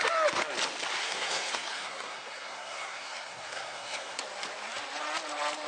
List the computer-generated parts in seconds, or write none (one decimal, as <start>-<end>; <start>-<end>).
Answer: 1.0-4.2

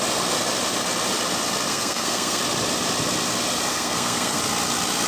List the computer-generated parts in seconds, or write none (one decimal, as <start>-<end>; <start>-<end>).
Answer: 1.7-2.4; 3.7-4.4

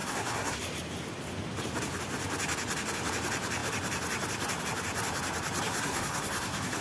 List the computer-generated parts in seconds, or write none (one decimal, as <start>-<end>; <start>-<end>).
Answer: 0.0-0.6; 5.7-6.8

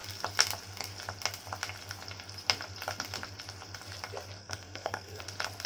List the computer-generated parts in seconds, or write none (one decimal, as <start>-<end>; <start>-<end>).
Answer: 4.4-5.2

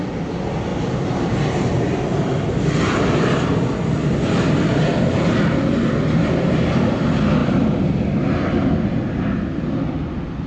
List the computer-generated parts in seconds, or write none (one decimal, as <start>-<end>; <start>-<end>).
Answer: none

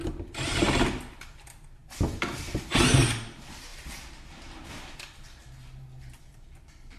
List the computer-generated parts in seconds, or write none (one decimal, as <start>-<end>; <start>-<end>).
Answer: none